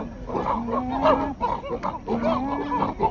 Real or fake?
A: real